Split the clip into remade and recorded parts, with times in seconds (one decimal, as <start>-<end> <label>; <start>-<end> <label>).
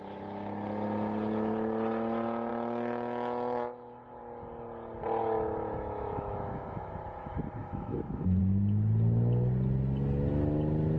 0.0-5.2 recorded; 5.2-6.9 remade; 6.9-7.6 recorded; 7.6-8.4 remade; 8.4-11.0 recorded